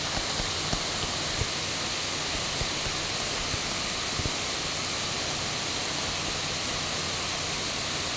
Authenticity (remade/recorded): recorded